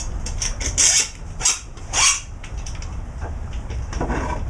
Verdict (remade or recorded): recorded